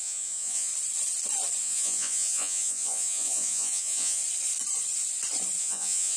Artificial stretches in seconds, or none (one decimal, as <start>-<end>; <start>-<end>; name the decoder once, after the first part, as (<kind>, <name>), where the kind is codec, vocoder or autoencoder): 0.0-0.7 (vocoder, Vocos); 1.6-4.2; 5.6-6.2